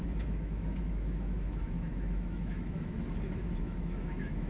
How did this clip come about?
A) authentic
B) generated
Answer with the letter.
B